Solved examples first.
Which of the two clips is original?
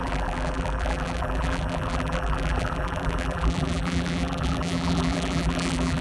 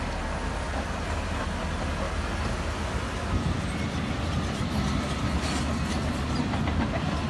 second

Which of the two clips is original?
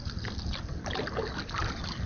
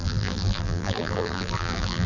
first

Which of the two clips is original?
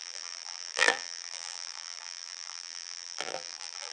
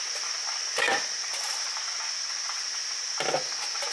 second